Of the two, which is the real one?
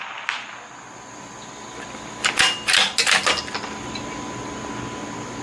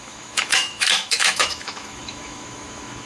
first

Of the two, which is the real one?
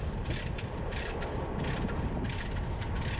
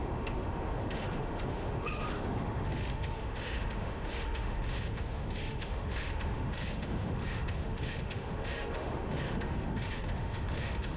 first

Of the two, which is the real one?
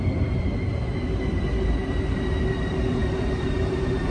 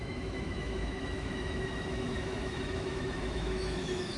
first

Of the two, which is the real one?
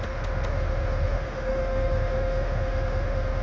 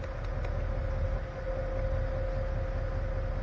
second